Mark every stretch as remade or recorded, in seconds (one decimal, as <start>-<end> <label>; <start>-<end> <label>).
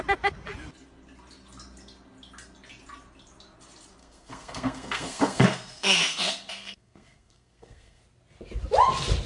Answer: 0.0-4.0 recorded; 4.0-8.0 remade; 8.0-9.3 recorded